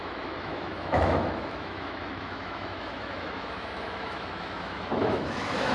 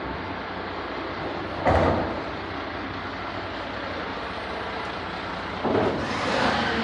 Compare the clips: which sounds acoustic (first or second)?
second